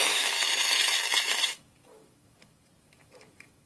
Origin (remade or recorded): remade